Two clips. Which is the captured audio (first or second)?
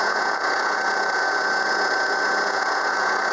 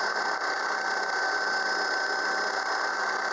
second